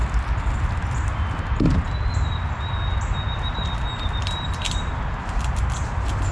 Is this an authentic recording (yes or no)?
yes